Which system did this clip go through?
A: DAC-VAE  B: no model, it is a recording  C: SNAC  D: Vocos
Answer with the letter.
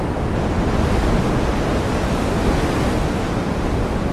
B